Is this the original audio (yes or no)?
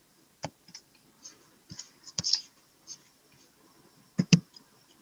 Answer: no